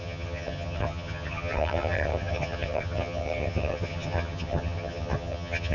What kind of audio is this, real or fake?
fake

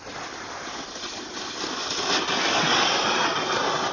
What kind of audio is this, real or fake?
real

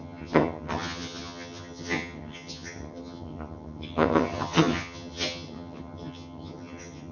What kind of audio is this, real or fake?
fake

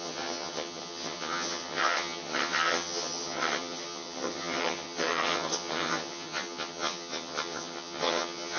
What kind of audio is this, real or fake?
fake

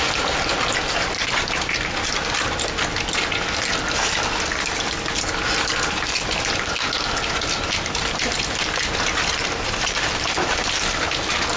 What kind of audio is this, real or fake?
real